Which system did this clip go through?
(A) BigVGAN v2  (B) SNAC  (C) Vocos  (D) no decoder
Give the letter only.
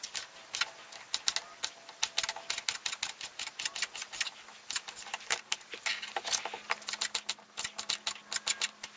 D